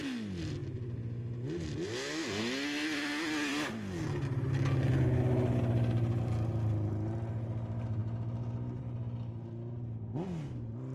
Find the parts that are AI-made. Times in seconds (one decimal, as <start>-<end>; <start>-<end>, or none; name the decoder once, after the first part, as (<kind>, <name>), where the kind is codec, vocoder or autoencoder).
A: none